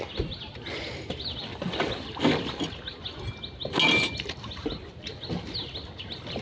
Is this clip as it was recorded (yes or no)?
yes